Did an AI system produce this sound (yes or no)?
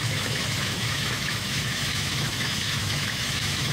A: yes